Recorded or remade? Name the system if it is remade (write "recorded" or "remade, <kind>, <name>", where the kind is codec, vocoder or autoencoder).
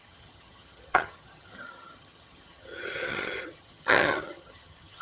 remade, vocoder, HiFi-GAN